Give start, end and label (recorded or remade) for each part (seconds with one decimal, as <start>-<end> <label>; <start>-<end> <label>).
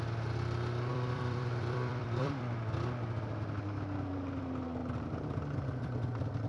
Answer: 0.0-0.9 recorded; 0.9-2.6 remade; 2.6-4.8 recorded; 4.8-6.5 remade